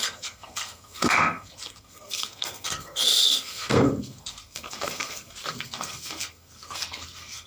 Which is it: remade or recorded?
remade